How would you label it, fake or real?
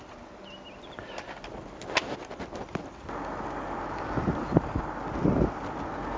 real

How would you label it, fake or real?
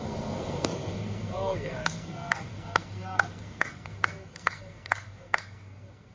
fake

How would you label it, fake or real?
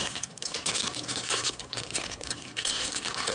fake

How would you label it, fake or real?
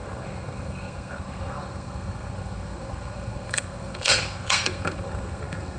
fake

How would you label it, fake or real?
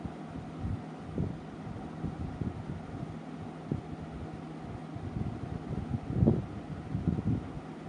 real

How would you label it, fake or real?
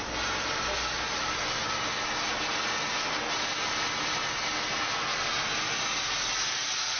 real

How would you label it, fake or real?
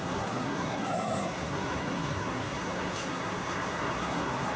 fake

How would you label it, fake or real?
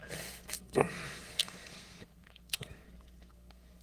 fake